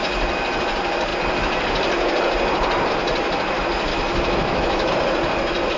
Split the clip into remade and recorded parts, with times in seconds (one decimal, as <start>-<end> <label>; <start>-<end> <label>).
0.0-3.9 recorded; 3.9-4.9 remade; 4.9-5.8 recorded